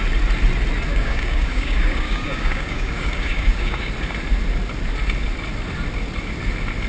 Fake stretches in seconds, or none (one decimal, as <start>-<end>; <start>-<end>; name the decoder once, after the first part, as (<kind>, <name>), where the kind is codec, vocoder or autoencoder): 0.9-3.9 (codec, DAC)